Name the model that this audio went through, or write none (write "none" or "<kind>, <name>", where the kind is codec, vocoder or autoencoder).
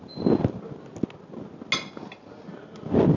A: none